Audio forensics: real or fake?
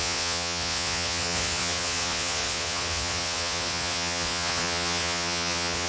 fake